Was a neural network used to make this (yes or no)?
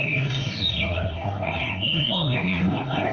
yes